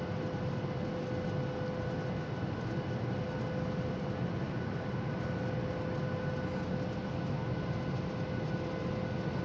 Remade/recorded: recorded